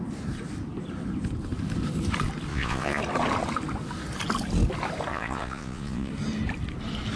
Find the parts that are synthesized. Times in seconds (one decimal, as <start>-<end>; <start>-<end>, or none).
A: 2.5-3.0; 5.1-6.1